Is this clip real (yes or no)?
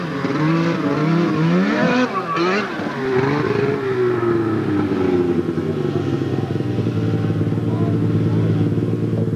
yes